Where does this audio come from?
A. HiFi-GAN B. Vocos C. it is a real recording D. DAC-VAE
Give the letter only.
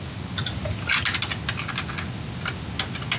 C